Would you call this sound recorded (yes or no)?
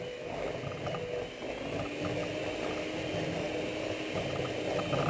yes